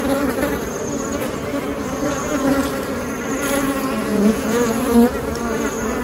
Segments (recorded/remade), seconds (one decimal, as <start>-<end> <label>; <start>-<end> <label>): 0.0-4.0 recorded; 4.0-4.8 remade; 4.8-6.0 recorded